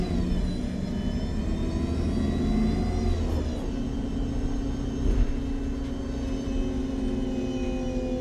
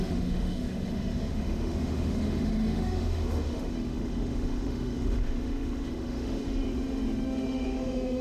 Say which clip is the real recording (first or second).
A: first